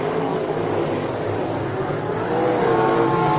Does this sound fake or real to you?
fake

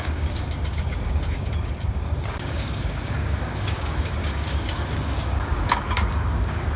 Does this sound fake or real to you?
fake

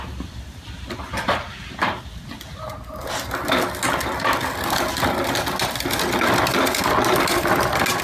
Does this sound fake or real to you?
real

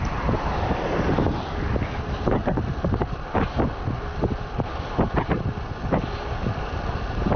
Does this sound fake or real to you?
real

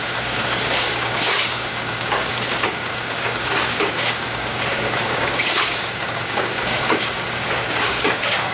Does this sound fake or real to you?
fake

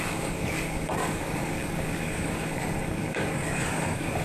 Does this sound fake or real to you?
fake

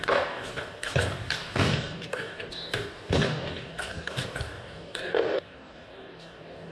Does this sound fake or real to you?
fake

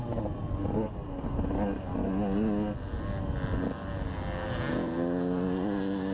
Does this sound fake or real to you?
real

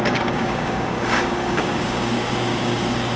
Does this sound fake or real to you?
fake